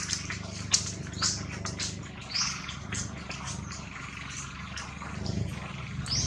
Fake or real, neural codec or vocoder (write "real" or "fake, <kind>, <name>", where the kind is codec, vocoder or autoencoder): real